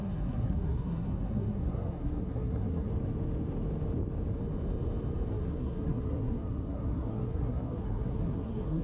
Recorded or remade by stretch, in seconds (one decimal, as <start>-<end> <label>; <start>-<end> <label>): 0.0-2.9 remade; 2.9-5.3 recorded; 5.3-8.8 remade